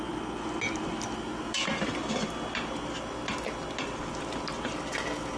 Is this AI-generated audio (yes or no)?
no